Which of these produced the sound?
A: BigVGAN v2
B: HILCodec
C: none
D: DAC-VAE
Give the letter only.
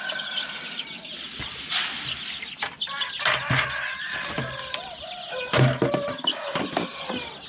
C